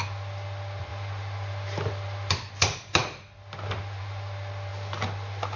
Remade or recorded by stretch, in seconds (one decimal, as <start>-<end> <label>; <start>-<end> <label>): 0.0-5.6 recorded